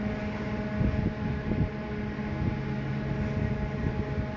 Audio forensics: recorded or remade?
recorded